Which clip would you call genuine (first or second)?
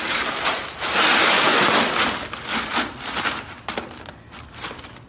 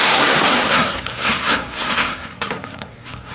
first